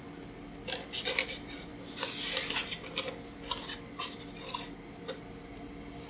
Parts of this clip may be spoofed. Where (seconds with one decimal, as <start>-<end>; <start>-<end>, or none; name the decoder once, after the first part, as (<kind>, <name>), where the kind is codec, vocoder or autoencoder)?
none